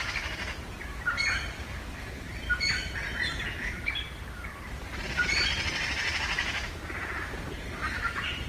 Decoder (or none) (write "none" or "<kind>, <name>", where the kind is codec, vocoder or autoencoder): vocoder, BigVGAN v2